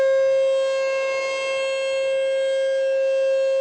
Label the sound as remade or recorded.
recorded